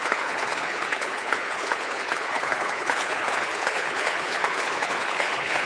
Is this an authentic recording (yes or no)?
no